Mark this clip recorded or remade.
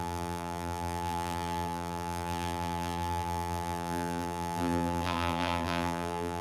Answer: remade